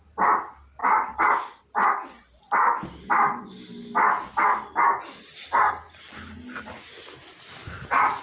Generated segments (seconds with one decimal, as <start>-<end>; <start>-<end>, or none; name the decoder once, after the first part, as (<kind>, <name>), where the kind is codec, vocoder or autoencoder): none